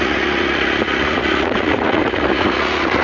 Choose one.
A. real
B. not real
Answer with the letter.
B